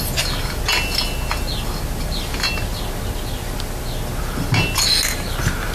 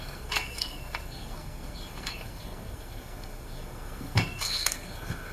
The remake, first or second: second